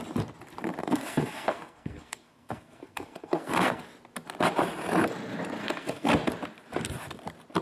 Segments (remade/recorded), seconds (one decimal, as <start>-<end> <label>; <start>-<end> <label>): 0.0-0.8 recorded; 0.8-3.8 remade; 3.8-5.6 recorded; 5.6-6.1 remade; 6.1-7.6 recorded